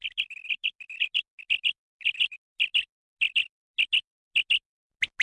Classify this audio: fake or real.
real